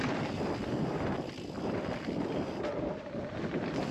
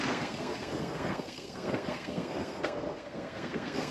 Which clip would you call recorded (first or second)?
first